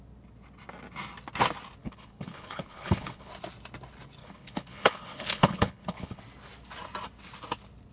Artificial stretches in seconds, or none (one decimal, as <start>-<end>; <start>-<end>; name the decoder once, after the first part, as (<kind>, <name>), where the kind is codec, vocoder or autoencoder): 1.8-3.3 (codec, HILCodec); 4.2-6.2

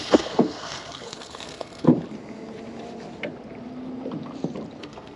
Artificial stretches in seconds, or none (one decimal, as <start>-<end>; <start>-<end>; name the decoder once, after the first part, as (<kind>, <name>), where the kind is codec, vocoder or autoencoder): 0.0-1.9 (codec, SNAC); 4.8-5.2

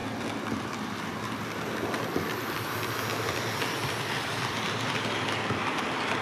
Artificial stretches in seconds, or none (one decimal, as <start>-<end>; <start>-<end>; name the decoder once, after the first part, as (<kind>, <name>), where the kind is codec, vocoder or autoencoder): none

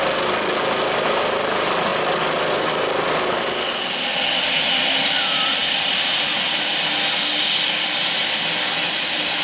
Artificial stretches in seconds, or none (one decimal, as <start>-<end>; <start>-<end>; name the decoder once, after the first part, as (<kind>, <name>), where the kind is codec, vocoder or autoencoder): none